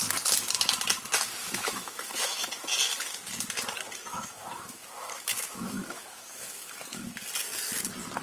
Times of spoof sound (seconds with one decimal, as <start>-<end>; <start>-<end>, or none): 1.4-2.5; 4.1-7.1